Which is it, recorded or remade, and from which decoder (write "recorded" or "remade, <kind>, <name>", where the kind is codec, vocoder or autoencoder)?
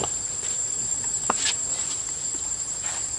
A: remade, vocoder, BigVGAN v2